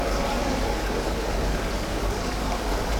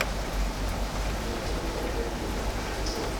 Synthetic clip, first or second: first